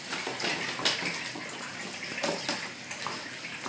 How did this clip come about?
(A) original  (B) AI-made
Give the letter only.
A